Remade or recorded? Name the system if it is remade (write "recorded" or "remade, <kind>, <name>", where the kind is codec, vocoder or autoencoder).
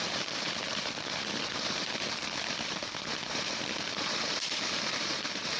remade, vocoder, BigVGAN v2